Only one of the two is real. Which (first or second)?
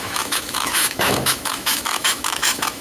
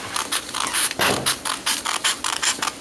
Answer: second